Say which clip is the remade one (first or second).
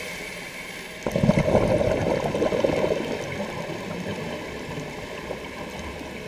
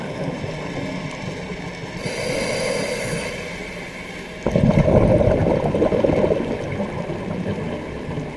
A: first